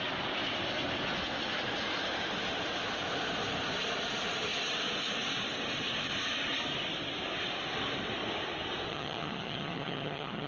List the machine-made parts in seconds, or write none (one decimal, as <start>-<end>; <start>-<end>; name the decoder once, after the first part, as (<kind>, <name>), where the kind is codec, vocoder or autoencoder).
8.9-10.5 (vocoder, HiFi-GAN)